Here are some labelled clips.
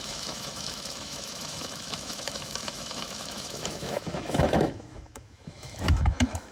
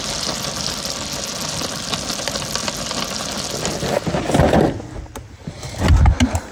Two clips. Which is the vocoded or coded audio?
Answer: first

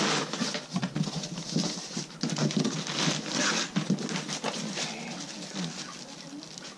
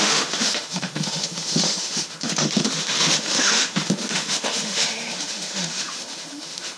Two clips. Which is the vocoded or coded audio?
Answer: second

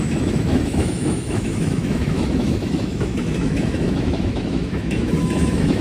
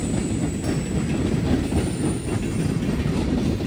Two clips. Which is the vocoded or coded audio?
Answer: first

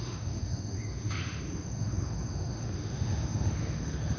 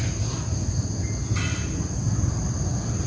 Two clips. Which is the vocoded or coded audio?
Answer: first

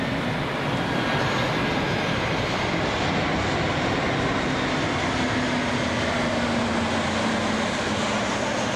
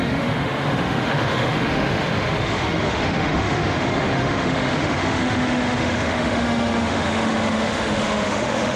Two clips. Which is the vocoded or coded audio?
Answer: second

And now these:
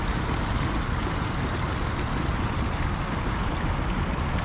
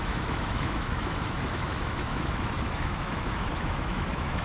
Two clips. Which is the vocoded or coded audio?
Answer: second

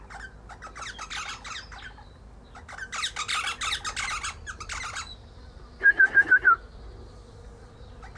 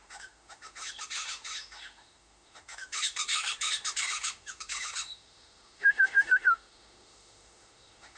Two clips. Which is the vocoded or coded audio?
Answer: second